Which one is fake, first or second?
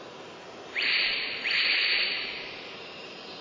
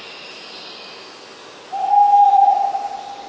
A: first